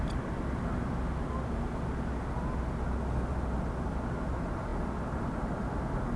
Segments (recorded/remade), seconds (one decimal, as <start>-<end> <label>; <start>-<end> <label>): 0.0-6.2 recorded